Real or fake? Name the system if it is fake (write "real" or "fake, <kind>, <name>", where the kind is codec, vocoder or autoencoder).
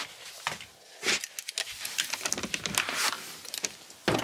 real